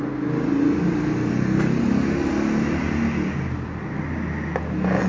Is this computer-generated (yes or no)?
no